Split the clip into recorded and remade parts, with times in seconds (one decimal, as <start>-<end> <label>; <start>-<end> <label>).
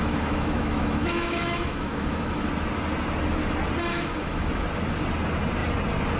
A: 0.0-2.5 remade; 2.5-3.9 recorded; 3.9-4.5 remade; 4.5-6.2 recorded